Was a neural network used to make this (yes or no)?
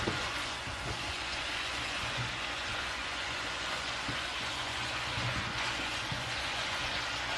yes